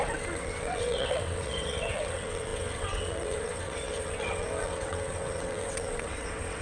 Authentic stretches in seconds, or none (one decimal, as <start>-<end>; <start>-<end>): none